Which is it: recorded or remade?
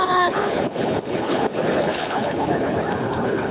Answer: remade